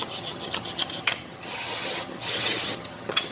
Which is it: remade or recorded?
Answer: remade